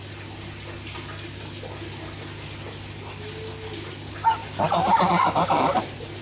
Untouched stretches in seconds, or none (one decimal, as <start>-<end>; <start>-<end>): 0.0-6.2

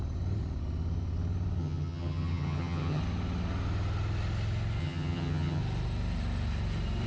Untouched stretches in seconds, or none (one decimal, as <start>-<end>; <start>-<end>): 0.0-1.6; 3.0-4.8; 5.6-7.1

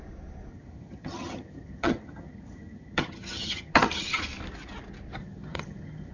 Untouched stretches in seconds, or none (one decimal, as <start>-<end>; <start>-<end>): 0.0-0.5; 4.2-5.2

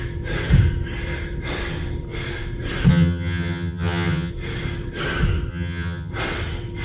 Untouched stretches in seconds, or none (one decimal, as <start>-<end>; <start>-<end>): 0.0-2.9; 4.3-5.5; 6.1-6.8

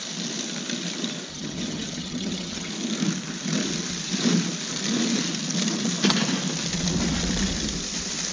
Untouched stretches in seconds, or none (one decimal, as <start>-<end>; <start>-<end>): 0.0-1.3; 2.7-8.3

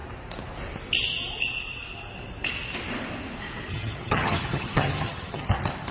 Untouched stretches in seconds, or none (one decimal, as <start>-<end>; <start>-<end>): 0.0-3.7; 5.5-5.9

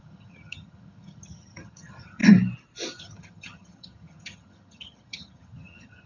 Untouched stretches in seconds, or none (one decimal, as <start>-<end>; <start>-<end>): 2.2-3.0

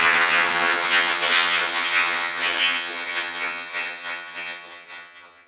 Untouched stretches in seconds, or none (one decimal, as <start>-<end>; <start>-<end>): none